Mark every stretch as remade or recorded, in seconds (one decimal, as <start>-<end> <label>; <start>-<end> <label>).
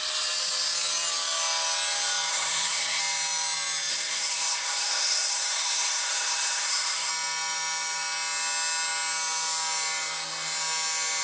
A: 0.0-2.3 recorded; 2.3-3.0 remade; 3.0-3.9 recorded; 3.9-7.1 remade; 7.1-11.2 recorded